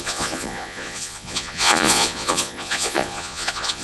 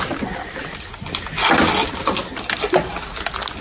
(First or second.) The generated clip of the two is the first